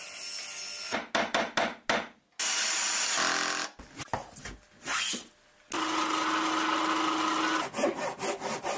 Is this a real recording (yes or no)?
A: yes